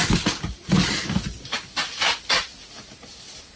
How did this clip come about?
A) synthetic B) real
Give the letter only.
B